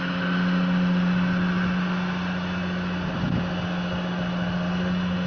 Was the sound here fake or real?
real